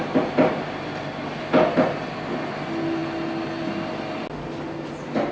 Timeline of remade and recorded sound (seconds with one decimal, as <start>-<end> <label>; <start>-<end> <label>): 0.0-5.3 recorded